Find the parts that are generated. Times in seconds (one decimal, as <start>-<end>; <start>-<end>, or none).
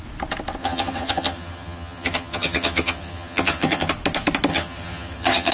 0.6-3.9; 4.5-5.5